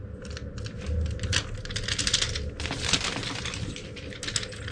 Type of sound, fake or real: real